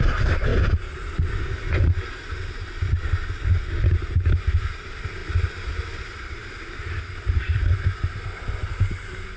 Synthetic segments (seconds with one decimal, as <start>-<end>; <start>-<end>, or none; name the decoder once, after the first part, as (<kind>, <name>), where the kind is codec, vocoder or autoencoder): none